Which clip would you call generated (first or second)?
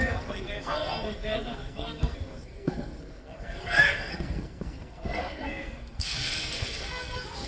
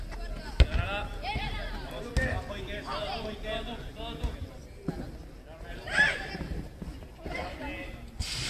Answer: first